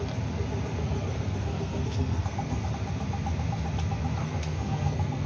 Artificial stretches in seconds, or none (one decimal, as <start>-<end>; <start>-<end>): 0.8-2.7; 4.2-5.3